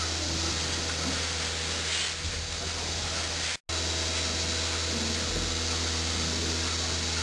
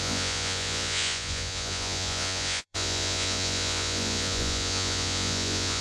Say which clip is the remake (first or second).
second